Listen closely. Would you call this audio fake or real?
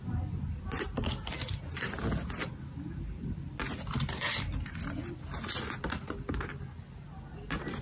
real